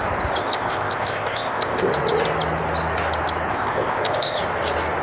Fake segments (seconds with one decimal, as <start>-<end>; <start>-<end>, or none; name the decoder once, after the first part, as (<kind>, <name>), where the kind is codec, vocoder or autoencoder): 0.4-1.9 (codec, ZipCodec); 3.5-4.4